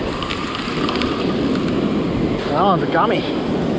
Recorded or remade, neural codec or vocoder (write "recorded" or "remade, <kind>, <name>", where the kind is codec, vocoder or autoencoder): recorded